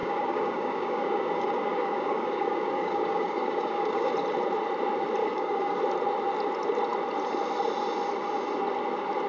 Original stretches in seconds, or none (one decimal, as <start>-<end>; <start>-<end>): 4.1-5.2; 5.8-9.3